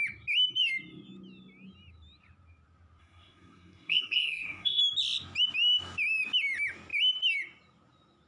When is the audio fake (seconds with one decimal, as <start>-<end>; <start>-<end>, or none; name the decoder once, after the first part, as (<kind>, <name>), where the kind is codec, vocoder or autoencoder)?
3.0-4.8 (codec, SNAC)

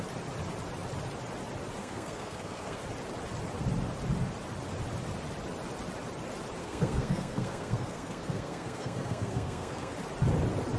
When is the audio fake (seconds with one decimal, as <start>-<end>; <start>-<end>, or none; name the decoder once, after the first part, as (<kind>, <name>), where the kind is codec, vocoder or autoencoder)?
1.8-2.8 (codec, SNAC); 6.6-9.9

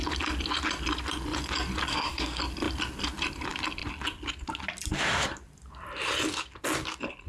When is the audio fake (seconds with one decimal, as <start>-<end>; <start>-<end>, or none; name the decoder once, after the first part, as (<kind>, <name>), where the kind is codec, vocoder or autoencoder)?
1.9-2.4 (codec, SNAC)

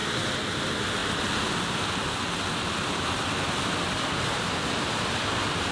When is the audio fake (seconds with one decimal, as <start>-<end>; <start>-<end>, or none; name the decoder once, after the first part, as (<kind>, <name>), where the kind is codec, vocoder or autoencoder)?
none

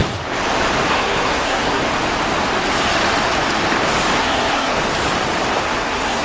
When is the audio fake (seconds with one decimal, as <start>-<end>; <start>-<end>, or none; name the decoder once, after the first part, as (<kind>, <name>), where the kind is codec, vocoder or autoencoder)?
0.9-1.8 (codec, SNAC); 4.2-4.8; 5.6-6.2

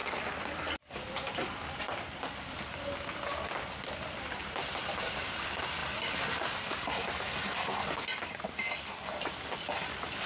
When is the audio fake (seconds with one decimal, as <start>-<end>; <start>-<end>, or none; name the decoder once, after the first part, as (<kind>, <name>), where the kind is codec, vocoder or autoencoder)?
none

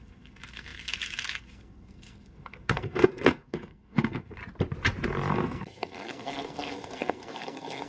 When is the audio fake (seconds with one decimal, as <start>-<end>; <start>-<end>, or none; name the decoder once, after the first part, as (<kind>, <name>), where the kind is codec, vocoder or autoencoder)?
0.0-4.4 (codec, SNAC); 5.3-7.9

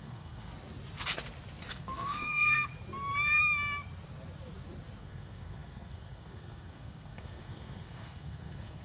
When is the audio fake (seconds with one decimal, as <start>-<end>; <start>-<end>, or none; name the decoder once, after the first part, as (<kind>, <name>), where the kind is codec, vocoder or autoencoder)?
0.0-0.5 (codec, SNAC); 1.7-2.7; 5.0-8.8